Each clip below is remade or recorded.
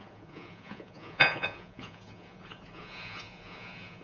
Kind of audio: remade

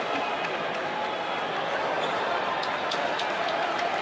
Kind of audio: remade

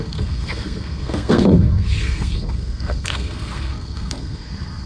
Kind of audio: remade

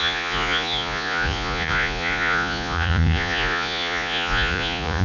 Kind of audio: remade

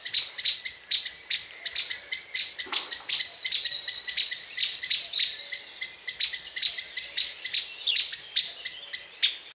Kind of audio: recorded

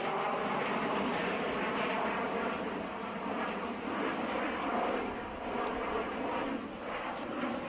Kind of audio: recorded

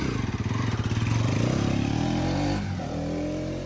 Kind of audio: recorded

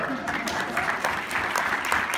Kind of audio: recorded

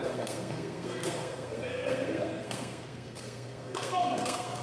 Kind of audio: remade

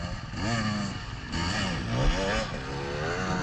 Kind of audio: recorded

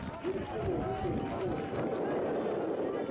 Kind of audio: recorded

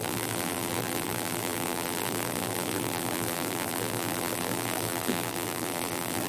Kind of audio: remade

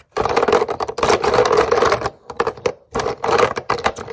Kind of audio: remade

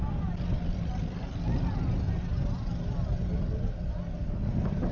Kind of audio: recorded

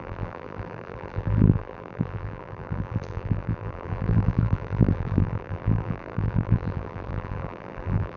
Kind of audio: remade